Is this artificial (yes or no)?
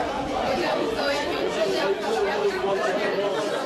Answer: yes